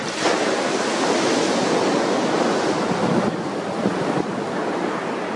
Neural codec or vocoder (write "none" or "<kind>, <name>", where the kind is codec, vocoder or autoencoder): none